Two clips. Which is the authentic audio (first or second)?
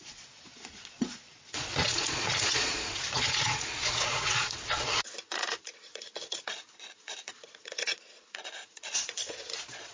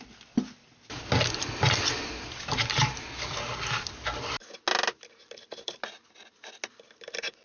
second